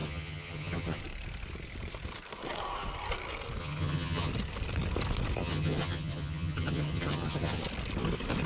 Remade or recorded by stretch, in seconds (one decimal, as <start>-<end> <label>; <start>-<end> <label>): 0.0-1.0 remade; 1.0-3.6 recorded; 3.6-4.3 remade; 4.3-5.4 recorded; 5.4-7.6 remade; 7.6-8.5 recorded